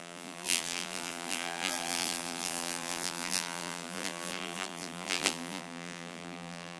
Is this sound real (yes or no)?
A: no